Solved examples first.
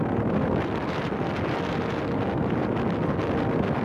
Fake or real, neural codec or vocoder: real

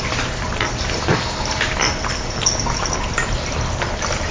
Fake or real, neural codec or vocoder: real